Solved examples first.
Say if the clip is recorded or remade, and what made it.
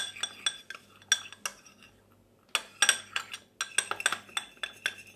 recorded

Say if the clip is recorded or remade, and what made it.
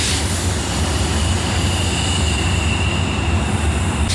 recorded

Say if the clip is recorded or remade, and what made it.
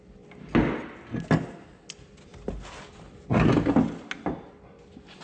recorded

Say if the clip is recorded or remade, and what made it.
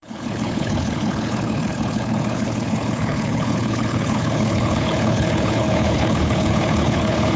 remade, codec, HILCodec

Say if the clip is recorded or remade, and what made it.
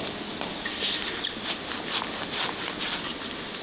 recorded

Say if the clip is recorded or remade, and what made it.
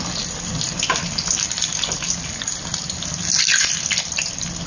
recorded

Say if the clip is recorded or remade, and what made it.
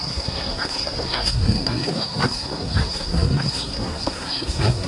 remade, codec, SNAC